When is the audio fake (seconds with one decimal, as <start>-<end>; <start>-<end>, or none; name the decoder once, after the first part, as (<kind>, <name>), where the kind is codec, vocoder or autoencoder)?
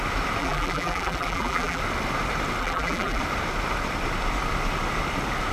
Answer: 0.4-1.8 (vocoder, BigVGAN v2); 2.6-3.2